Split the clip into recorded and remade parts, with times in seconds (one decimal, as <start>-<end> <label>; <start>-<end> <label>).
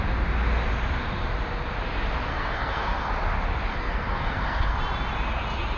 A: 0.0-2.3 recorded; 2.3-3.1 remade; 3.1-3.7 recorded; 3.7-4.8 remade; 4.8-5.8 recorded